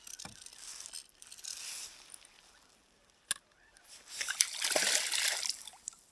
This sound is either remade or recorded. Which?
recorded